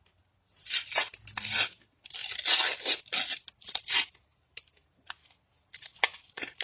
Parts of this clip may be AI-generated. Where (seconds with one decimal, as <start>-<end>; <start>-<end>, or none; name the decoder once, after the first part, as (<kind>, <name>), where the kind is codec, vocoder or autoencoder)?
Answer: none